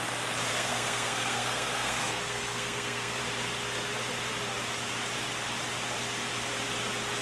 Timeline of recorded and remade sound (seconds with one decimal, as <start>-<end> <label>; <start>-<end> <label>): 0.0-0.5 recorded; 0.5-3.2 remade; 3.2-7.2 recorded